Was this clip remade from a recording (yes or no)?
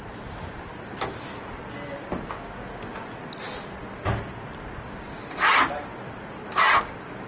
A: no